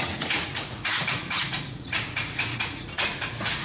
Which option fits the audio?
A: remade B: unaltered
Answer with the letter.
A